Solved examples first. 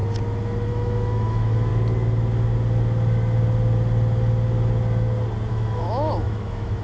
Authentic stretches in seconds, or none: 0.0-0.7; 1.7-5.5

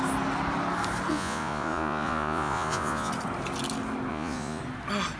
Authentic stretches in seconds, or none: 0.0-1.1; 3.1-4.1; 4.6-5.2

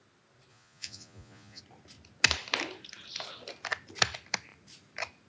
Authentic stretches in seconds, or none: 0.0-0.5; 1.6-5.3

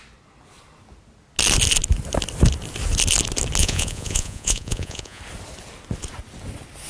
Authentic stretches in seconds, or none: 0.0-3.6; 5.2-6.9

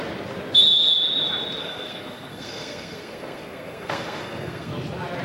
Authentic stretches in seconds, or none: 0.0-1.6; 4.7-5.2

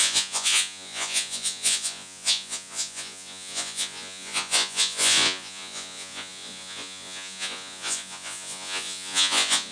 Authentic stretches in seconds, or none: none

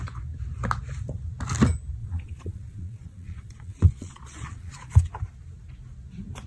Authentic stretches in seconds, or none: 0.0-2.0; 4.9-6.5

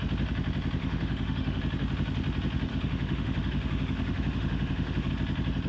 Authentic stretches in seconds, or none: 0.0-0.8; 1.6-2.7; 5.1-5.7